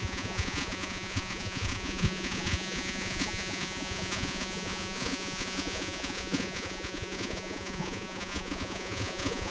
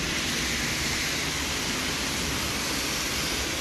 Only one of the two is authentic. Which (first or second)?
second